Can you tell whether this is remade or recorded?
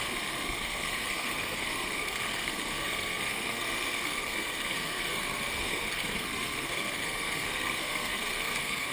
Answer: remade